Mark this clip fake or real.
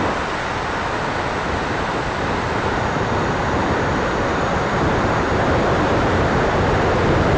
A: real